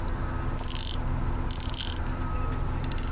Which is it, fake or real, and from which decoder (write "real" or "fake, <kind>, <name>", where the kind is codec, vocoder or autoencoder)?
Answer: real